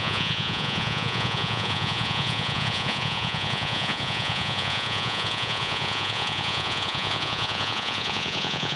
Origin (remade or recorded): remade